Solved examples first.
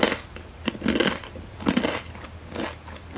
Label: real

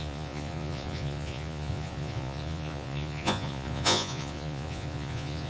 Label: fake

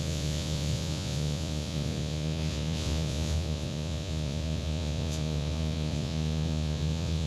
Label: fake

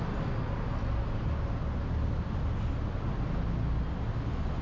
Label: real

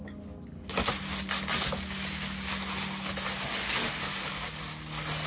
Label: real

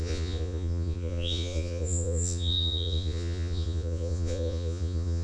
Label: fake